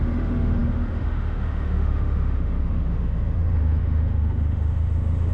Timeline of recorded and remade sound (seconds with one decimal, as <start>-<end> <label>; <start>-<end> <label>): 0.0-5.3 remade